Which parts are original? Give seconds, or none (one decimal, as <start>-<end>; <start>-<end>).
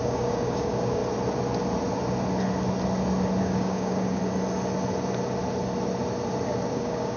1.0-3.4; 4.2-6.7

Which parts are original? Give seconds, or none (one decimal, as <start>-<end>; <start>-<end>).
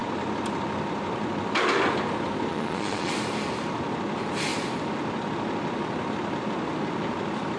0.0-2.5; 3.1-7.6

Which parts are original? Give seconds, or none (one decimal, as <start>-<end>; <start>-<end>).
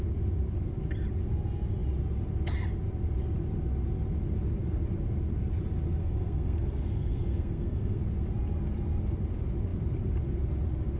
0.0-6.0; 8.0-11.0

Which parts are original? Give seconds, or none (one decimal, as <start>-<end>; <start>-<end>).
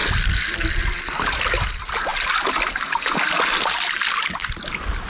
0.0-5.1